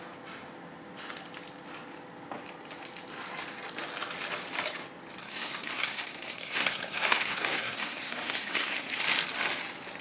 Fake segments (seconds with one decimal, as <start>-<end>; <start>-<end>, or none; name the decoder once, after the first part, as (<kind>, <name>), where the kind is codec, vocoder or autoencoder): 5.2-9.0 (codec, SNAC)